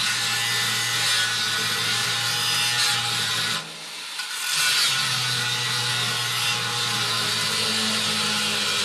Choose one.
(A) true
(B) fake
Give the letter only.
A